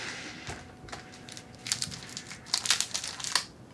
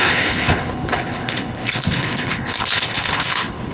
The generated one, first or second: second